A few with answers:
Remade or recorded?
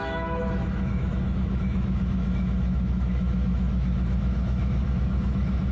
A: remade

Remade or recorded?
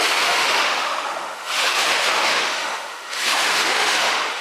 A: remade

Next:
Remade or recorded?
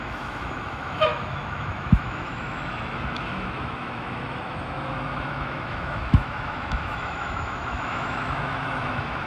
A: remade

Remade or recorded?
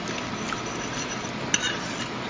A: recorded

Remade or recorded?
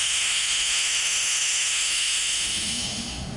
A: remade